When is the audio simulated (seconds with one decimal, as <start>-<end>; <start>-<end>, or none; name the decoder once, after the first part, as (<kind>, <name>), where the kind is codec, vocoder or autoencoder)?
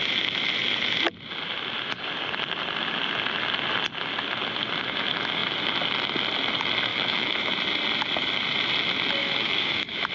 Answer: 6.9-7.5 (autoencoder, DAC-VAE); 9.2-10.1